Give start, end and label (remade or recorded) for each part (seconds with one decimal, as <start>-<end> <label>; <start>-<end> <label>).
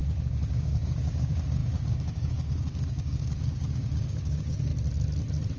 0.0-0.5 recorded; 0.5-4.7 remade; 4.7-5.6 recorded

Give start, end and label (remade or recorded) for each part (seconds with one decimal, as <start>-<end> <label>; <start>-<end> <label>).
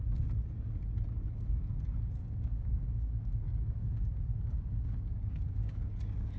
0.0-2.2 recorded; 2.2-5.8 remade; 5.8-6.4 recorded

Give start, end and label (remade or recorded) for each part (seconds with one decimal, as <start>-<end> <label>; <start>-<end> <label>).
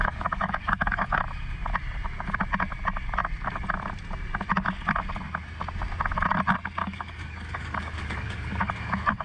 0.0-1.2 remade; 1.2-6.8 recorded; 6.8-8.7 remade; 8.7-9.2 recorded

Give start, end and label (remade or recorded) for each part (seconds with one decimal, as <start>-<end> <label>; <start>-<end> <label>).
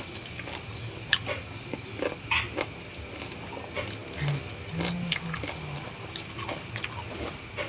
0.0-7.7 recorded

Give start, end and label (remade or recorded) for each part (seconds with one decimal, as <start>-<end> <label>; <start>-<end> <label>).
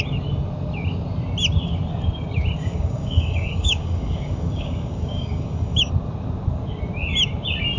0.0-2.6 recorded; 2.6-5.8 remade; 5.8-7.8 recorded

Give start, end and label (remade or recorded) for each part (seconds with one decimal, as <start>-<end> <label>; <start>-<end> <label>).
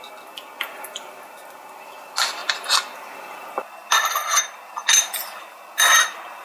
0.0-6.4 recorded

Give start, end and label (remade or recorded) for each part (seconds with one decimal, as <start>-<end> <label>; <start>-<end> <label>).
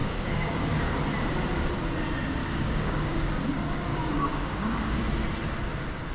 0.0-1.0 remade; 1.0-2.4 recorded; 2.4-3.3 remade; 3.3-3.9 recorded; 3.9-5.0 remade; 5.0-6.1 recorded